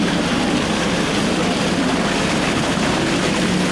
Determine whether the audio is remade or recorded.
recorded